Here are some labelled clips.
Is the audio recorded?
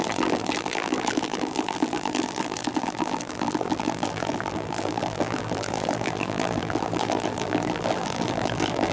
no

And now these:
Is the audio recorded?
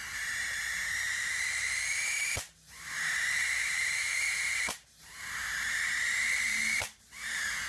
no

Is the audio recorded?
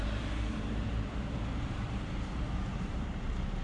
no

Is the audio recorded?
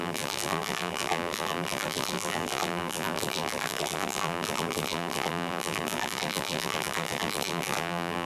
no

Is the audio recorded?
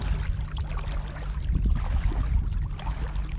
yes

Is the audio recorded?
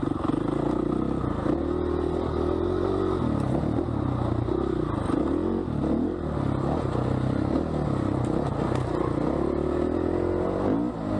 yes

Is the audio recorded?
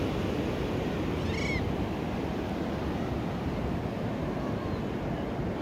yes